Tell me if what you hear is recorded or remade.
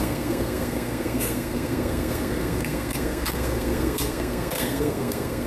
remade